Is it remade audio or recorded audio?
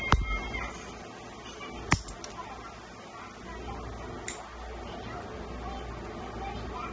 recorded